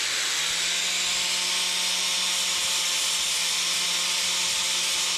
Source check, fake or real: real